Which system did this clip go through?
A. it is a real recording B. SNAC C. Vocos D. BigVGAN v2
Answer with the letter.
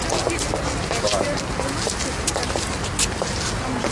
A